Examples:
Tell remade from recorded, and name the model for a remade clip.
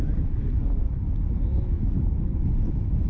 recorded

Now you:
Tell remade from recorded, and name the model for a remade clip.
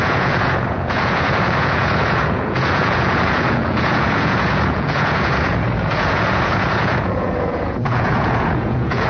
remade, vocoder, Vocos